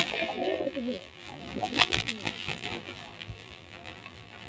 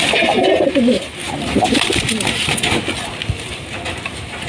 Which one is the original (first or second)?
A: second